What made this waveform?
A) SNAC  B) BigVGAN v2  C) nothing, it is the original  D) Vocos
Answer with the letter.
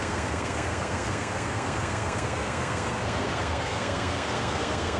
A